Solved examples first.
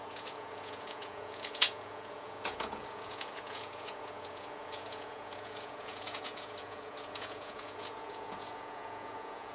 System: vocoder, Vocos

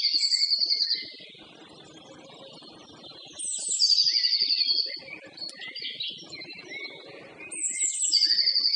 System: none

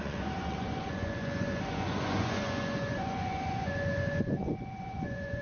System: vocoder, Vocos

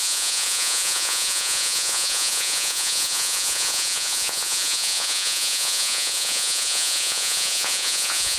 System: vocoder, Vocos